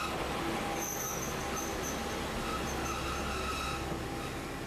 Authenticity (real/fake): real